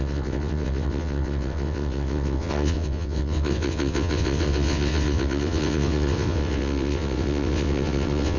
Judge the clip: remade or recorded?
remade